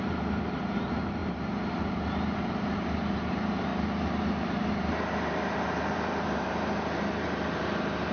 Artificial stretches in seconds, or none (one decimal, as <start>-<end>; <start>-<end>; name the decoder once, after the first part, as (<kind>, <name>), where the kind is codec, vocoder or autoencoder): 0.0-3.7 (vocoder, BigVGAN v2); 4.8-8.1